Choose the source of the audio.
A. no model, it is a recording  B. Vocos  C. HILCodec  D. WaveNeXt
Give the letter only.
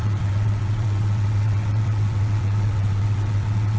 D